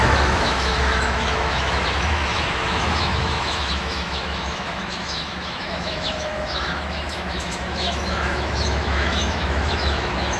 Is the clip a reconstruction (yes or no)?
yes